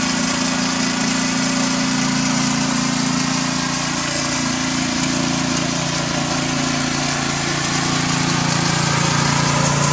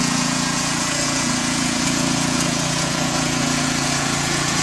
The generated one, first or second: second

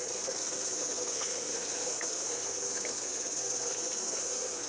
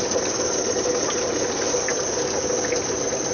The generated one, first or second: first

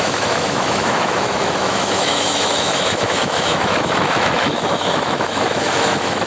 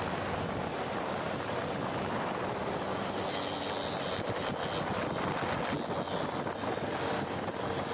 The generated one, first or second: first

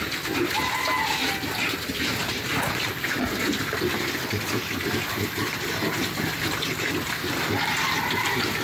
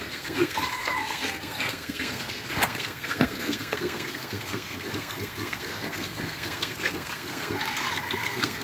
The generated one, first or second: second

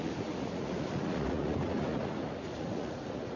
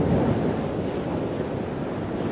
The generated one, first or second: first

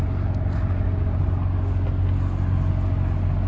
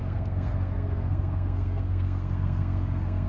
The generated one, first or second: second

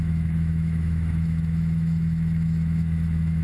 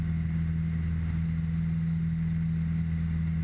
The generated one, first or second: first